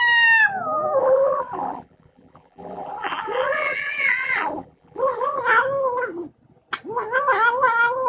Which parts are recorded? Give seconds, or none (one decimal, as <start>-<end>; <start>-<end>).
0.0-1.0; 5.4-8.1